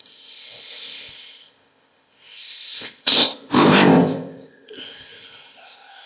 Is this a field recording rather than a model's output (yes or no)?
no